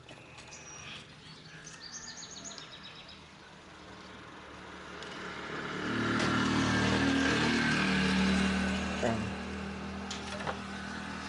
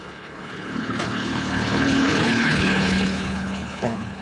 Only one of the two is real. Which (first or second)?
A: first